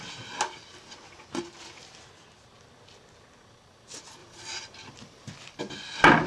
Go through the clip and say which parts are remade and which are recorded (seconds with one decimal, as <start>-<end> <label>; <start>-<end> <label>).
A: 0.0-4.2 recorded; 4.2-5.6 remade; 5.6-6.3 recorded